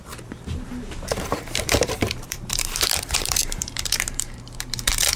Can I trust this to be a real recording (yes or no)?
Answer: no